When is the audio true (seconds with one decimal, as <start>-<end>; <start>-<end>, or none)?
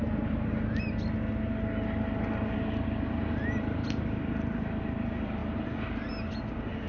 0.0-6.9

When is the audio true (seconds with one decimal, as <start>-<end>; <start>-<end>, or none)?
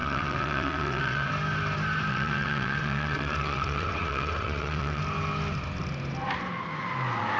1.3-2.1; 5.0-7.4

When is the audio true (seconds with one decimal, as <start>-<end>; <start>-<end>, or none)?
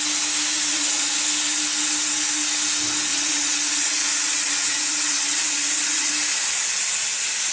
0.0-0.5; 1.2-3.1; 6.1-7.5